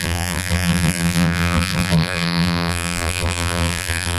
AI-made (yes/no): yes